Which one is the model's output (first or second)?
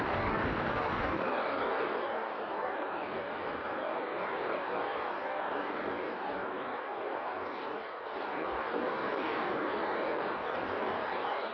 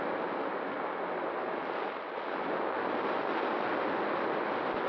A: first